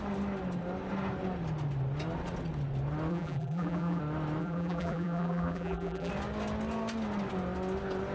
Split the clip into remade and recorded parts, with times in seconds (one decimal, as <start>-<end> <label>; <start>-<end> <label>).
0.0-3.1 recorded; 3.1-4.0 remade; 4.0-4.4 recorded; 4.4-6.1 remade; 6.1-8.1 recorded